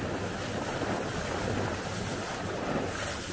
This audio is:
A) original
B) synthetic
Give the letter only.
A